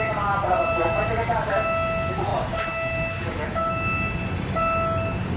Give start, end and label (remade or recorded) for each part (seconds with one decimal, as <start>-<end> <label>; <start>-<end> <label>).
0.0-5.4 recorded